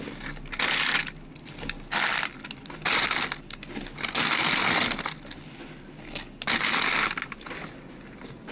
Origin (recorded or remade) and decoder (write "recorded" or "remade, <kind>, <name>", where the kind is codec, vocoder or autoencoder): recorded